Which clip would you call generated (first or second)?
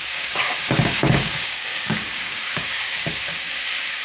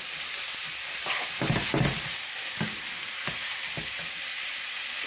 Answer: first